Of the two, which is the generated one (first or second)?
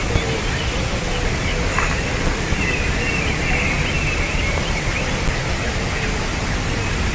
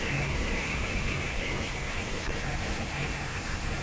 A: second